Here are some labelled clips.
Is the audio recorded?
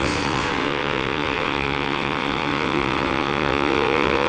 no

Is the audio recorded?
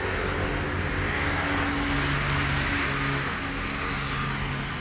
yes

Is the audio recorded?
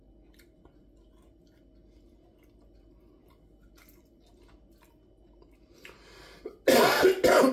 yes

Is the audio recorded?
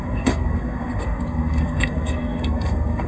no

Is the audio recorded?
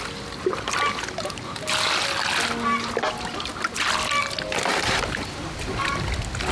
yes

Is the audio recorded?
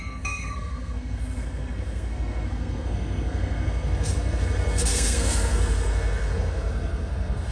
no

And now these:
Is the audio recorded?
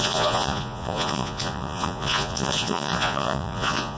no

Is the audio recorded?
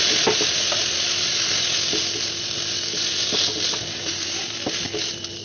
yes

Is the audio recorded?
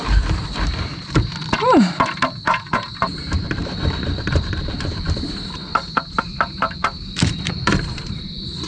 no